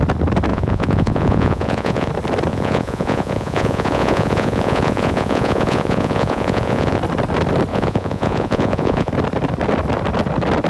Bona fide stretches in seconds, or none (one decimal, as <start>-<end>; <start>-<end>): 0.0-0.5; 2.1-2.5; 7.0-7.7; 9.1-10.7